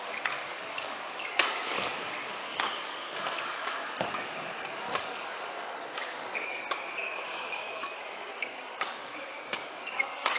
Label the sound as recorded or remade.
remade